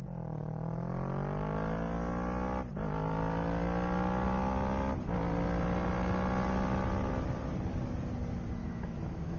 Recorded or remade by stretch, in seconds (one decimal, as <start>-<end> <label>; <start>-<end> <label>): 0.0-8.6 recorded; 8.6-9.4 remade